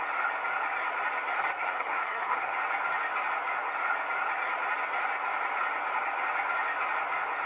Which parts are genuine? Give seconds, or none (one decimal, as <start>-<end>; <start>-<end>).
0.0-1.4; 2.5-7.5